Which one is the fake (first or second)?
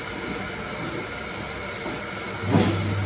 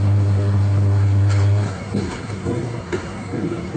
second